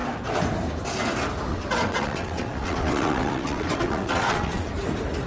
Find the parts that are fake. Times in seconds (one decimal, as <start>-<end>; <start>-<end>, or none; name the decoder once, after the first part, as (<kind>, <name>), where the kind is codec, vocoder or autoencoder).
1.5-4.7 (vocoder, WaveNeXt)